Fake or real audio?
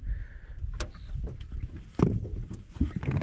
real